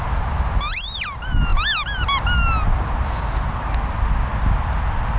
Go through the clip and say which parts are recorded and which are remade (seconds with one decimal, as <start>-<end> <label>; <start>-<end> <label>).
0.0-5.2 recorded